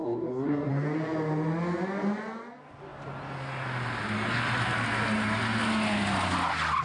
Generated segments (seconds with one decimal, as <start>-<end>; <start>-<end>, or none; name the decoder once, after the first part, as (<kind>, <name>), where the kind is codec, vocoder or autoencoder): 0.0-0.7 (codec, SNAC)